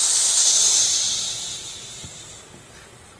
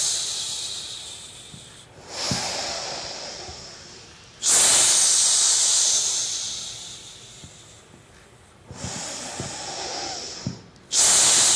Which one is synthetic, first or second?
first